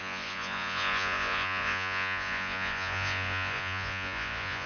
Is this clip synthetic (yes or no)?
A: yes